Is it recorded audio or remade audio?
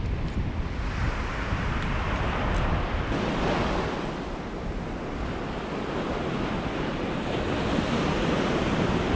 recorded